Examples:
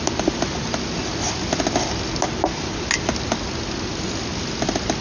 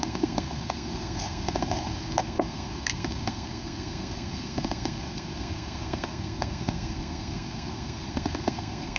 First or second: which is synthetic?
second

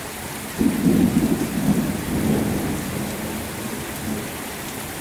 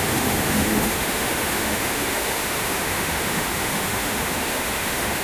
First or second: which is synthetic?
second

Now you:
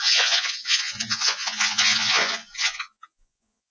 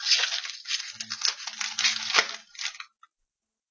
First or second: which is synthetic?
first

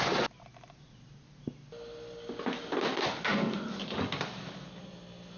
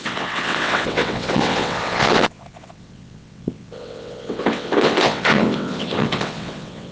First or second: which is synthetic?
second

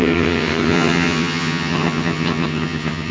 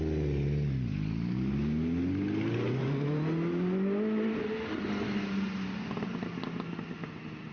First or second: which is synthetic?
first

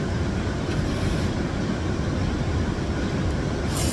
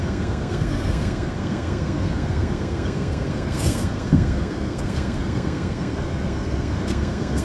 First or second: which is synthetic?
second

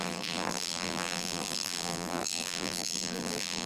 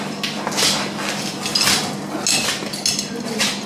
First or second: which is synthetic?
first